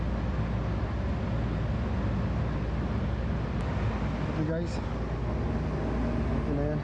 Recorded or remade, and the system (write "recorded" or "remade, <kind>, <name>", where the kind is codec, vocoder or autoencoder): recorded